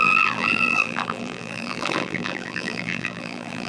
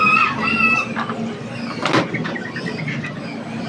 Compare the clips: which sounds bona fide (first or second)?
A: second